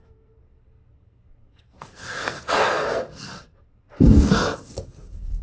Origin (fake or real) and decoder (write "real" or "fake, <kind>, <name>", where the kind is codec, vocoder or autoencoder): fake, codec, SNAC